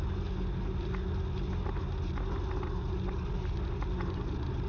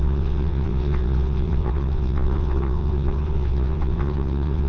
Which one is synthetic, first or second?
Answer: second